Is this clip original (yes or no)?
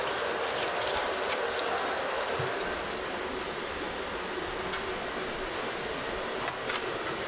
yes